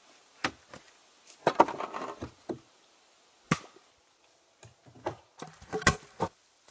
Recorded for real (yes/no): yes